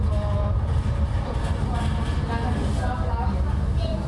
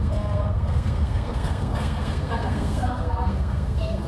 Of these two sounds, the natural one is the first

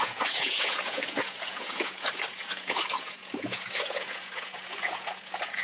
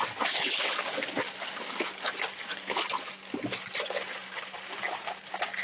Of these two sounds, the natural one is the second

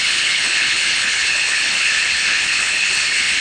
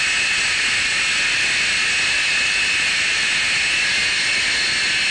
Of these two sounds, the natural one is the second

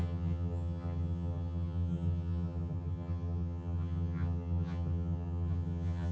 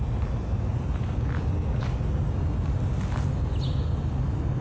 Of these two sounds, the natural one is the second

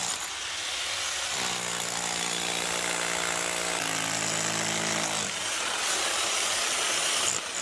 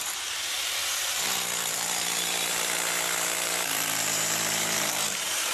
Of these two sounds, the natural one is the first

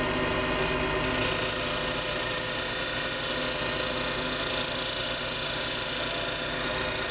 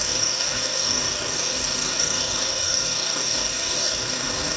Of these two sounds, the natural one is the first